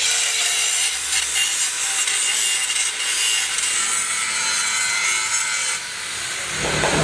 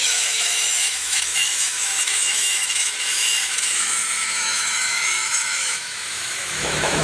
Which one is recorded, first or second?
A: first